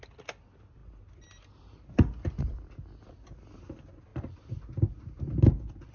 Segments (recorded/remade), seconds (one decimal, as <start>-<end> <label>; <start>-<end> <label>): 0.0-5.9 recorded